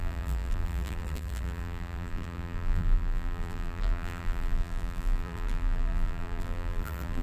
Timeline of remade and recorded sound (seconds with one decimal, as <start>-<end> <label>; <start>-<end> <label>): 0.0-7.2 remade